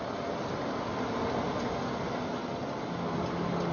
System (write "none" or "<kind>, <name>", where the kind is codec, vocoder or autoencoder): none